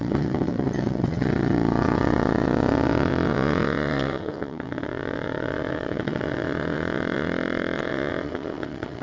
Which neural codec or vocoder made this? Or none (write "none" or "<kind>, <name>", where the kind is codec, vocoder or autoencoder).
vocoder, WaveNeXt